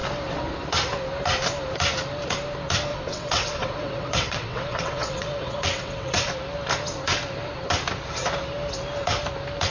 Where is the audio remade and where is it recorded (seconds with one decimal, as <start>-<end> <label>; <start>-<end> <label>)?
0.0-2.9 recorded; 2.9-6.3 remade; 6.3-9.7 recorded